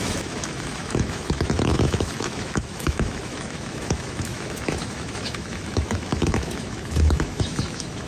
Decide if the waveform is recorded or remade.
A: remade